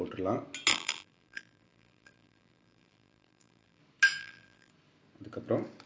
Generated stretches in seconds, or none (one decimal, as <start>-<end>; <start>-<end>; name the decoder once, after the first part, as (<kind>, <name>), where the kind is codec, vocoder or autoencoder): 0.7-3.8 (vocoder, BigVGAN v2); 4.2-4.7